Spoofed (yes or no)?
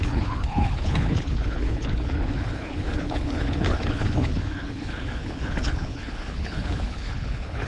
yes